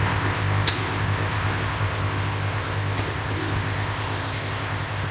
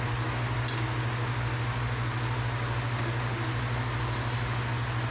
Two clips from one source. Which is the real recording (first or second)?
second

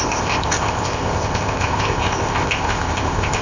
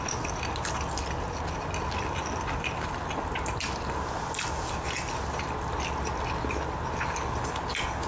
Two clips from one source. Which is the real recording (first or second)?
second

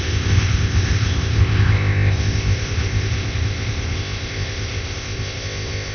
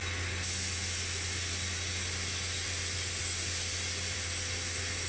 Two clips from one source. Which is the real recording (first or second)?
second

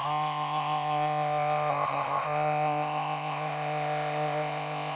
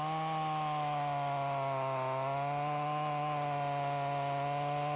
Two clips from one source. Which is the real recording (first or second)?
second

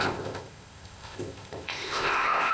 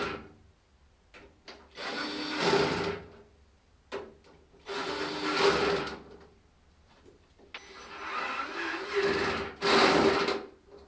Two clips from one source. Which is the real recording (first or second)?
second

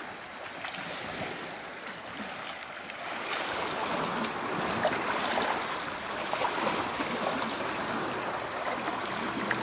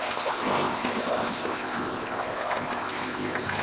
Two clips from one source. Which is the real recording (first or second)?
first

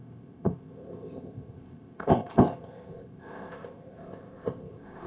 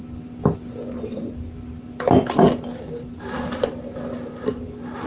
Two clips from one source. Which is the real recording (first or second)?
second